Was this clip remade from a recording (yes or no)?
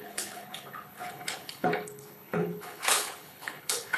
yes